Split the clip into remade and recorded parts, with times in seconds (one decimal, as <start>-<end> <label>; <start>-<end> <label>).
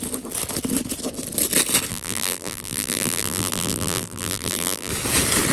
0.0-1.9 recorded; 1.9-4.9 remade; 4.9-5.5 recorded